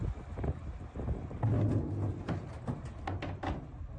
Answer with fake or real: real